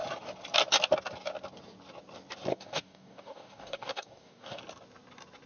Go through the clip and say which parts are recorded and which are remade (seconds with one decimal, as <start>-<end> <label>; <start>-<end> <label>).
0.0-2.5 recorded; 2.5-4.6 remade; 4.6-5.5 recorded